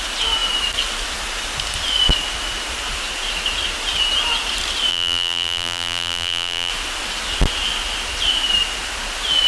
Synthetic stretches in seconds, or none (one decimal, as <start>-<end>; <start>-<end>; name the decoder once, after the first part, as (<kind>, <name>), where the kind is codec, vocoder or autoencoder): 4.9-6.7 (vocoder, BigVGAN v2)